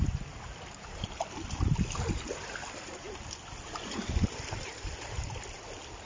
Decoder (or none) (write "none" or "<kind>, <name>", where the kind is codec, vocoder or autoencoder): none